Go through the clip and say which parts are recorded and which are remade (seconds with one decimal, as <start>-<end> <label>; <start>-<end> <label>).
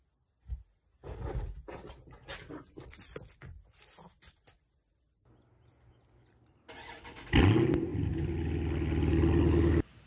0.0-10.1 recorded